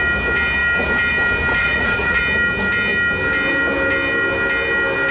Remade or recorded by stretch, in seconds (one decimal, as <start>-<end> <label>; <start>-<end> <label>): 0.0-1.6 recorded; 1.6-2.2 remade; 2.2-5.1 recorded